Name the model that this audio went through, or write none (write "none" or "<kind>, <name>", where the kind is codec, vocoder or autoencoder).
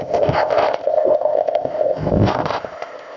codec, ZipCodec